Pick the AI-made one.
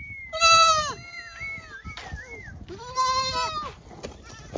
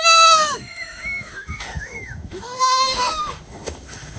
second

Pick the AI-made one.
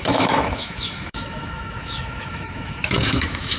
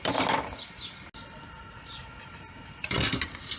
first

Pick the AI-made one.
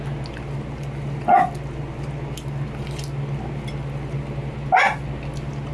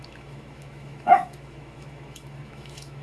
second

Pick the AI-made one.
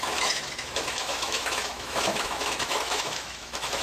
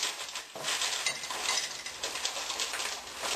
first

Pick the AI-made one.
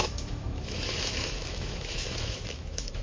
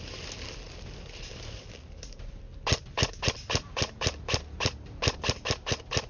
first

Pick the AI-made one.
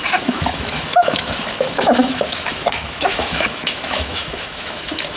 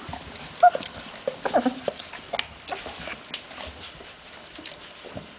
first